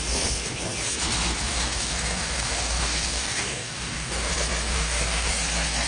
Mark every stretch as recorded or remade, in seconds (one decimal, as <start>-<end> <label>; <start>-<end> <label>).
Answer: 0.0-1.5 recorded; 1.5-4.3 remade; 4.3-4.7 recorded; 4.7-5.3 remade; 5.3-5.9 recorded